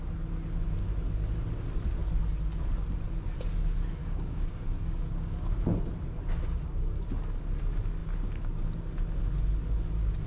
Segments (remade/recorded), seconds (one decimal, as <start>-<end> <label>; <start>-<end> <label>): 0.0-4.0 recorded; 4.0-5.7 remade; 5.7-10.3 recorded